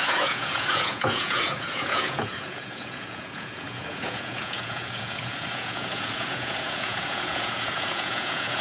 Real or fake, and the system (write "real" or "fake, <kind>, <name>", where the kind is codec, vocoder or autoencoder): fake, vocoder, Vocos